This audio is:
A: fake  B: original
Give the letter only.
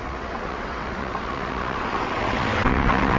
A